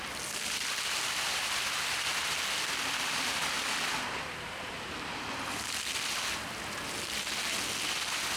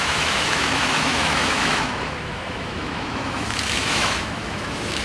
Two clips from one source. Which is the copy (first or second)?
second